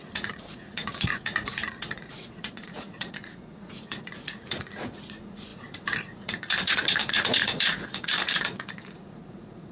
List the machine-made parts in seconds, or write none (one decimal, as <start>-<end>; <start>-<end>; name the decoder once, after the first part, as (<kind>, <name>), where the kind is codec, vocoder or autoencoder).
0.0-9.7 (vocoder, Vocos)